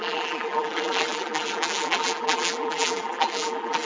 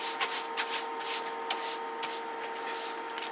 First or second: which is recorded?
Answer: second